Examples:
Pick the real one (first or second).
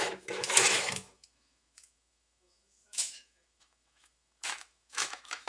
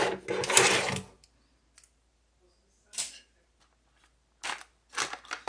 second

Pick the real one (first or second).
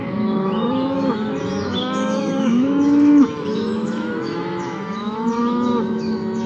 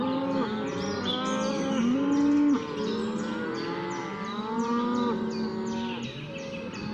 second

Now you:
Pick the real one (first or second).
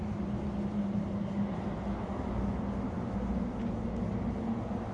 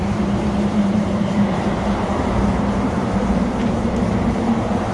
first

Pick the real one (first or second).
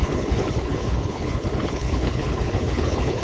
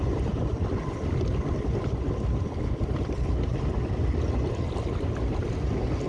second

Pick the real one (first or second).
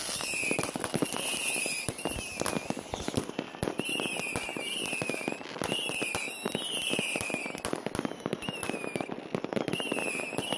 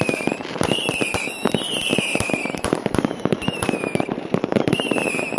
first